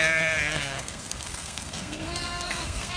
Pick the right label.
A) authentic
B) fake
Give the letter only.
B